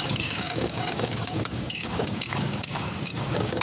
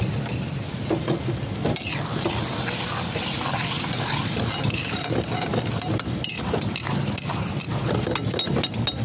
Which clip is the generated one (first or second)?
first